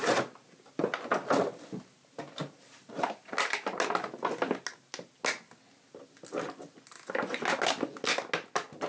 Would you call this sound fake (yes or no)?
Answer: no